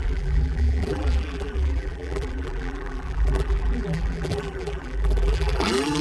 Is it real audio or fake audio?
fake